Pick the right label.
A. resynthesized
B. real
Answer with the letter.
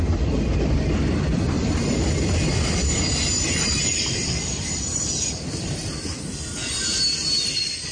A